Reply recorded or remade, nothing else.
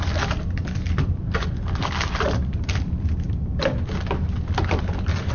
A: recorded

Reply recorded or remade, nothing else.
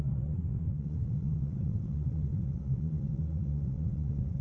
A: remade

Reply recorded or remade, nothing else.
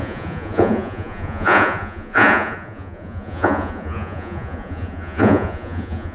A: remade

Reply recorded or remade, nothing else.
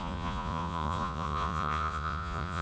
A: remade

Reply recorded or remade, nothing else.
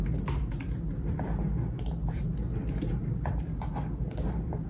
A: recorded